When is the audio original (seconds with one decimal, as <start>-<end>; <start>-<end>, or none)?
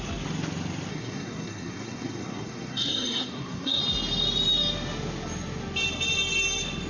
0.0-0.9; 3.8-6.9